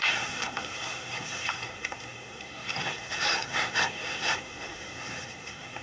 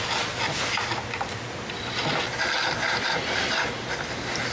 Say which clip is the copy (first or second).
first